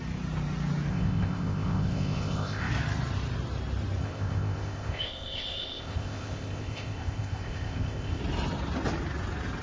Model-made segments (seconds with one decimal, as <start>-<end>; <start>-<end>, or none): 0.9-2.7; 4.0-8.2